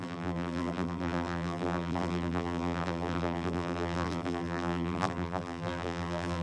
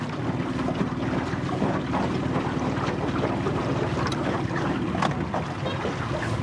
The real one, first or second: second